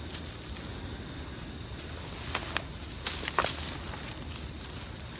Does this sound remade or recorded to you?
recorded